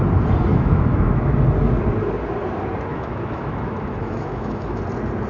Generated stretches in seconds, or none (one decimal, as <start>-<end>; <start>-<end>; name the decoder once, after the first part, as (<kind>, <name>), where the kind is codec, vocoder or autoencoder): 0.5-1.4 (autoencoder, DAC-VAE); 2.9-4.8